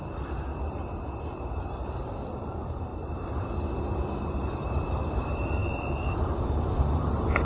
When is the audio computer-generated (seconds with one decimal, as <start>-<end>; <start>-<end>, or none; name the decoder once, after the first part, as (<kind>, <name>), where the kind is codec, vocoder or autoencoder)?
0.0-0.5 (vocoder, BigVGAN v2); 1.2-7.4